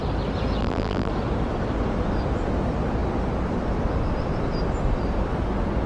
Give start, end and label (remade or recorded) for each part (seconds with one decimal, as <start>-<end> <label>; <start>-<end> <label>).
0.0-0.6 recorded; 0.6-1.1 remade; 1.1-5.9 recorded